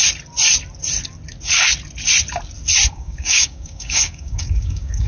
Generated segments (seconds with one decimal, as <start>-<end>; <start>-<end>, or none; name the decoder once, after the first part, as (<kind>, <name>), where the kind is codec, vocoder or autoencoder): 2.9-5.1 (codec, DAC)